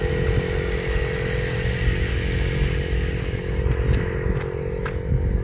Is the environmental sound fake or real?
real